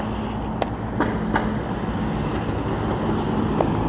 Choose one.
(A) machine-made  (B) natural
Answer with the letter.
B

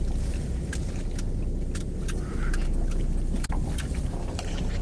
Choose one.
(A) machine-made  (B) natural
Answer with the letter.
B